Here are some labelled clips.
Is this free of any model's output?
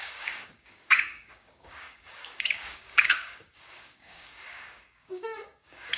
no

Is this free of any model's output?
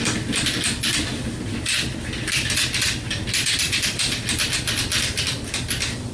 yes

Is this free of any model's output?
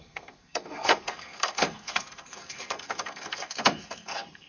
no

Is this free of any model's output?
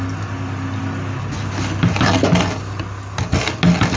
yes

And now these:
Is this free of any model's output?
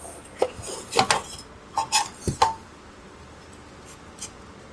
yes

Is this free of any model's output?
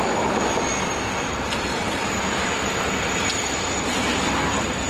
yes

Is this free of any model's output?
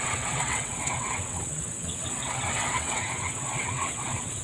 no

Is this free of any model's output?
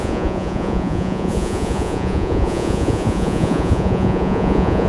no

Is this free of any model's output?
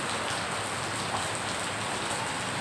yes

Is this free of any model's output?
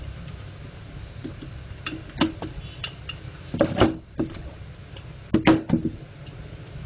yes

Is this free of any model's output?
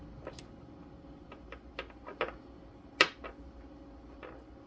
yes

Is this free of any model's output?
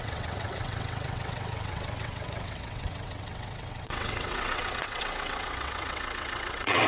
no